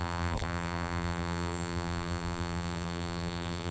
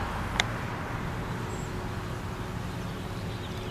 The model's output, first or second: first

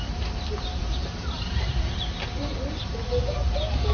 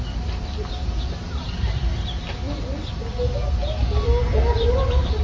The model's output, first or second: first